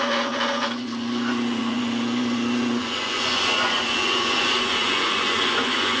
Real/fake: fake